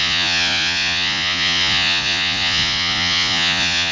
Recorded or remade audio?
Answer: remade